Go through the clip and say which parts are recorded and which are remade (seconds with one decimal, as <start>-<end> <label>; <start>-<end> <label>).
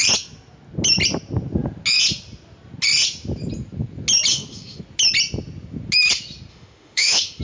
0.0-4.3 recorded; 4.3-4.8 remade; 4.8-6.5 recorded; 6.5-7.4 remade